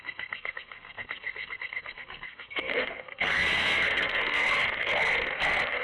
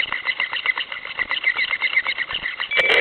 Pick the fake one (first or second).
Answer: first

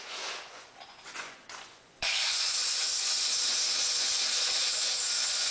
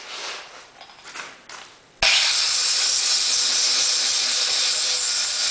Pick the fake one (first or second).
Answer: first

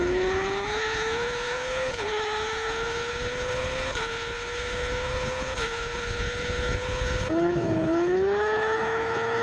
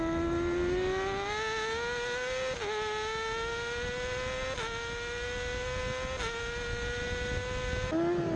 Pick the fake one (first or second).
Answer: first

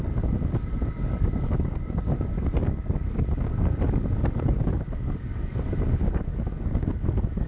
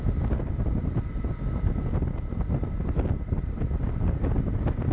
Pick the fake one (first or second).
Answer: first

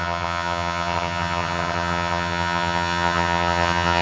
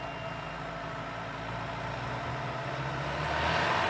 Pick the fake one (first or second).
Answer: first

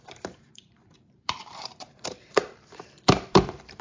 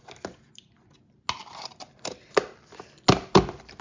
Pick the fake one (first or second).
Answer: first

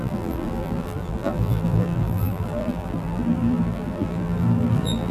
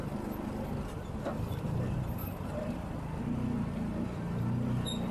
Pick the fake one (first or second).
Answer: first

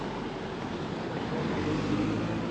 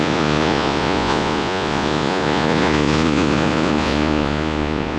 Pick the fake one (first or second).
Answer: second